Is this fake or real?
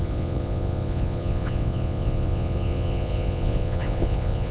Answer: fake